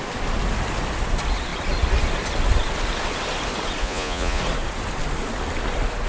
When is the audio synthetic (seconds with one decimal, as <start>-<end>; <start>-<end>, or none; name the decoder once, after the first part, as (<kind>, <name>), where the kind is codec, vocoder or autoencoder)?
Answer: 3.8-4.4 (vocoder, Vocos)